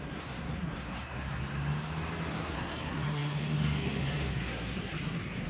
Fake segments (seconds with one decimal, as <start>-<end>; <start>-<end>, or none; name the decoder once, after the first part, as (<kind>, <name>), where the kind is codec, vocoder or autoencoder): 0.0-1.4 (codec, SNAC); 2.3-5.5